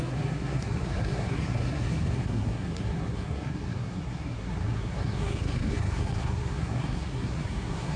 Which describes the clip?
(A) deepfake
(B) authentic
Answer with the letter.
A